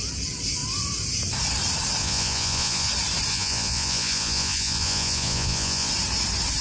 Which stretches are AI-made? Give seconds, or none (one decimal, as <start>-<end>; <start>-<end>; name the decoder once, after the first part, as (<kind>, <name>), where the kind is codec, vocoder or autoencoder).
2.0-2.9 (vocoder, Vocos); 3.3-5.9

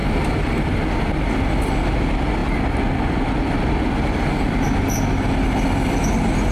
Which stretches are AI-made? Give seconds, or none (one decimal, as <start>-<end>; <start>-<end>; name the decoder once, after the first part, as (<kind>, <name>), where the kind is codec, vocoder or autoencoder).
none

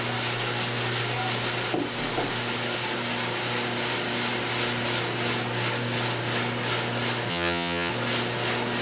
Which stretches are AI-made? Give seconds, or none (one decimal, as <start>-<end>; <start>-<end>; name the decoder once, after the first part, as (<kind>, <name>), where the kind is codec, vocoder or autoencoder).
7.3-7.9 (vocoder, HiFi-GAN)

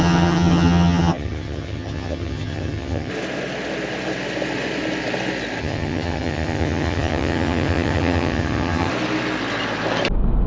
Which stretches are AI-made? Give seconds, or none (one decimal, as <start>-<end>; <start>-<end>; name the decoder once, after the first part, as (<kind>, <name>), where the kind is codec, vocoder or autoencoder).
0.0-3.1 (vocoder, HiFi-GAN); 5.6-8.9

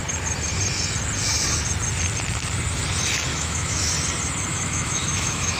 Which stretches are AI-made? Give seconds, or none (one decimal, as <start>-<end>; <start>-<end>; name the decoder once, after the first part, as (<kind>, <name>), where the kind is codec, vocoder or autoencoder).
3.3-3.9 (autoencoder, DAC-VAE); 4.5-5.6

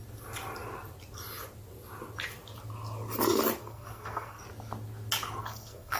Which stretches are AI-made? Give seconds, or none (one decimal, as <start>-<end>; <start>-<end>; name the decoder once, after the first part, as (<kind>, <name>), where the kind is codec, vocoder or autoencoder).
3.6-4.4 (codec, SNAC); 5.4-6.0

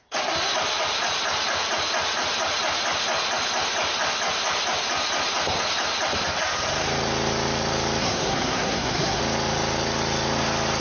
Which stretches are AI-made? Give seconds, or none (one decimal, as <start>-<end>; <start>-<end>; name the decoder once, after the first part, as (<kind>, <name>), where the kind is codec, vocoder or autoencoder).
8.0-9.2 (codec, SNAC)

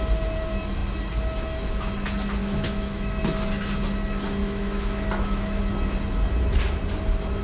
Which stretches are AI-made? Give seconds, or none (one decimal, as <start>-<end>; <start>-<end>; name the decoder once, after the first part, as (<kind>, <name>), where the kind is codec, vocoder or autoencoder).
2.4-3.2 (autoencoder, DAC-VAE); 4.4-5.6